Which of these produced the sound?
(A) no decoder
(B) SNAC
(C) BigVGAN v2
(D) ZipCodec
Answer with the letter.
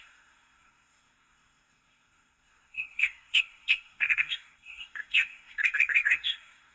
B